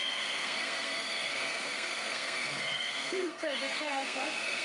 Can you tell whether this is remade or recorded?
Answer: remade